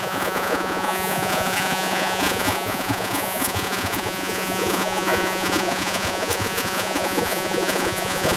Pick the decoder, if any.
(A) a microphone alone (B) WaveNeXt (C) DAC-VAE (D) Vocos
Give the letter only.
D